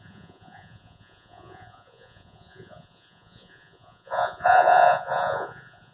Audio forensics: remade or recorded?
remade